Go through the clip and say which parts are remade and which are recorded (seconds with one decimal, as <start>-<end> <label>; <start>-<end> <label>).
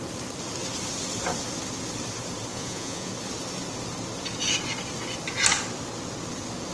0.0-2.5 recorded; 2.5-3.1 remade; 3.1-6.7 recorded